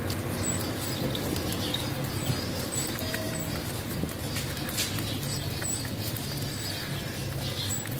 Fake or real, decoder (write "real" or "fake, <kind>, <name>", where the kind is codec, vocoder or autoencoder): real